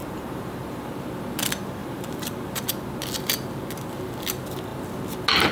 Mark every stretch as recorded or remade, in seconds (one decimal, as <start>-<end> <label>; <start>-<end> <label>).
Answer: 0.0-0.9 remade; 0.9-1.8 recorded; 1.8-2.6 remade; 2.6-5.5 recorded